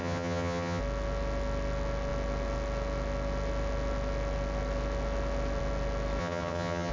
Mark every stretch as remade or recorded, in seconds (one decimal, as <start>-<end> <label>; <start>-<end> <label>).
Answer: 0.0-0.8 remade; 0.8-6.2 recorded; 6.2-6.9 remade